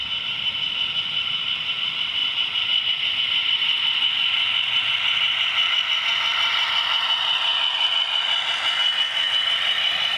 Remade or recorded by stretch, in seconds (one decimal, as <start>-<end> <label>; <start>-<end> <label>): 0.0-2.2 recorded; 2.2-3.1 remade; 3.1-8.9 recorded; 8.9-10.2 remade